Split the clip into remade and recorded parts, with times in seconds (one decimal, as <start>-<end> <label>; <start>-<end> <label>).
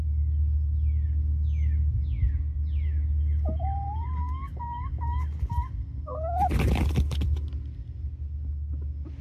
0.0-9.2 recorded